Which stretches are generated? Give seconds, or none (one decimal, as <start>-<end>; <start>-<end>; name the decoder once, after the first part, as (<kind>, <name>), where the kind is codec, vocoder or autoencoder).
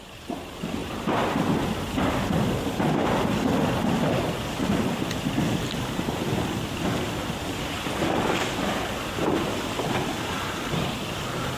none